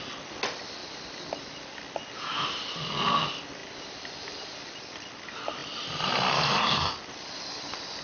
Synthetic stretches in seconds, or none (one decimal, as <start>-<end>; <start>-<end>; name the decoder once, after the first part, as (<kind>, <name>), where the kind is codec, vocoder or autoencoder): 3.6-5.1 (vocoder, BigVGAN v2); 5.6-7.4